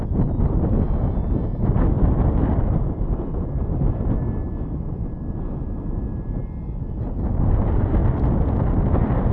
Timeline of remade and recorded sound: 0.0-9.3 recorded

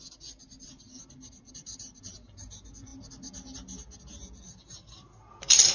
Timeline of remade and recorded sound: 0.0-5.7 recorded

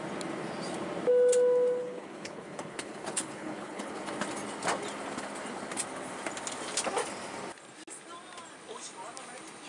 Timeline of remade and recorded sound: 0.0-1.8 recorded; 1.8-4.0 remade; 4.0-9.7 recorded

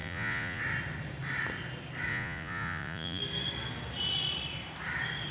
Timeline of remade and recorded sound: 0.0-0.6 remade; 0.6-2.1 recorded; 2.1-3.2 remade; 3.2-5.3 recorded

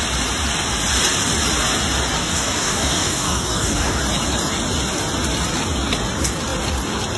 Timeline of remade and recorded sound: 0.0-2.2 recorded; 2.2-4.0 remade; 4.0-7.2 recorded

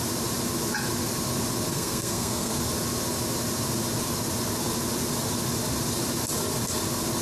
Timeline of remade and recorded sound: 0.0-1.7 recorded; 1.7-2.6 remade; 2.6-7.2 recorded

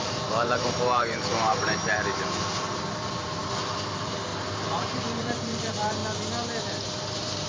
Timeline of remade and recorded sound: 0.0-6.0 remade; 6.0-6.7 recorded; 6.7-7.5 remade

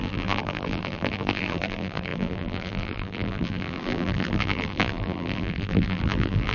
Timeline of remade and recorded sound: 0.0-6.5 remade